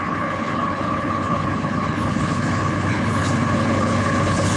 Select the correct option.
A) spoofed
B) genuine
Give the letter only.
A